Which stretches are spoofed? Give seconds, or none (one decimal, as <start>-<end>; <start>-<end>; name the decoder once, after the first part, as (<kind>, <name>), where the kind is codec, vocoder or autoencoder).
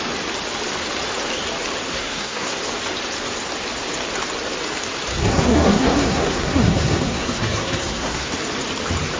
1.9-2.6 (codec, SNAC); 5.1-8.3